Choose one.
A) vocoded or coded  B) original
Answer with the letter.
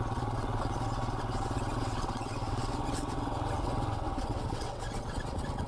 A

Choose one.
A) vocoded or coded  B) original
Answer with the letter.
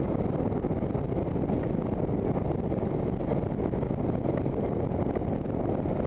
B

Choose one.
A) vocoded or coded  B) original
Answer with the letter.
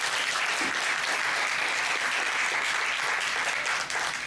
B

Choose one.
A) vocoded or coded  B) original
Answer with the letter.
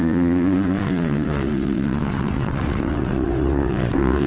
A